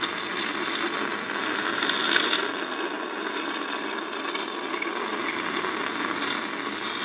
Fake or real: real